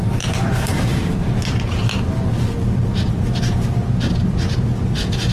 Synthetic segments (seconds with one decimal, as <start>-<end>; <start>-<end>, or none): none